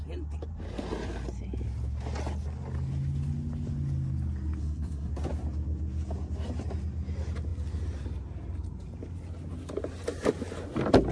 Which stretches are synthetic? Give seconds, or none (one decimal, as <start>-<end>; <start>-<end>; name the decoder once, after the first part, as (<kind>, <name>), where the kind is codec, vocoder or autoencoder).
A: 4.6-5.1 (codec, SNAC)